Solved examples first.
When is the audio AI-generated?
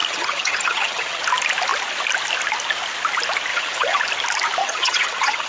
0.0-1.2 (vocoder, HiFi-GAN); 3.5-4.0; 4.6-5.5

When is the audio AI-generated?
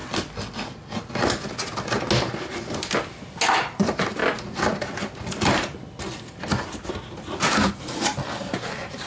3.6-4.2 (vocoder, BigVGAN v2); 7.7-9.1